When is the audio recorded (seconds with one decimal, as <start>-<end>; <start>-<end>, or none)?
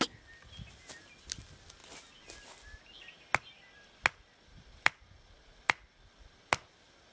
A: 0.0-7.1